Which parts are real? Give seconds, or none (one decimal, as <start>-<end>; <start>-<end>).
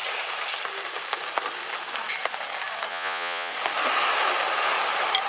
0.0-2.9; 3.5-5.3